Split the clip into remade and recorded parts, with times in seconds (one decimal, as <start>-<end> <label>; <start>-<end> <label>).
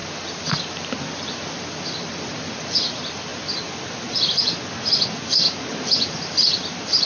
0.0-3.3 remade; 3.3-6.3 recorded; 6.3-7.0 remade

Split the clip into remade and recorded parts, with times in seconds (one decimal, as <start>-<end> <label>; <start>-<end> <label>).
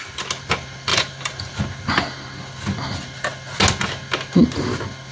0.0-0.9 recorded; 0.9-1.6 remade; 1.6-5.1 recorded